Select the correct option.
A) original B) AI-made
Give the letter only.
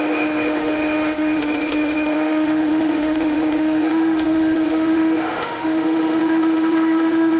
B